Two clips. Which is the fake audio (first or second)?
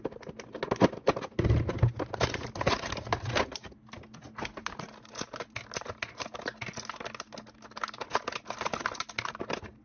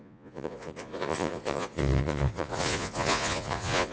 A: second